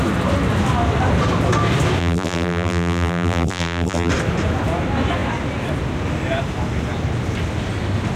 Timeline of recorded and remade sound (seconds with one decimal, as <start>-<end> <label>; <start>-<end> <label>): 0.0-2.0 recorded; 2.0-4.1 remade; 4.1-8.2 recorded